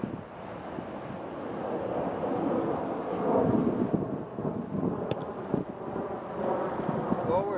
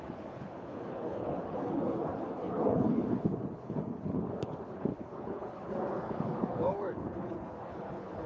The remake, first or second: second